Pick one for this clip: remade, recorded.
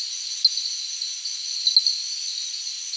recorded